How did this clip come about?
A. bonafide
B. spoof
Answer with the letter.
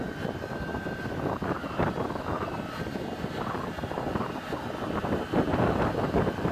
A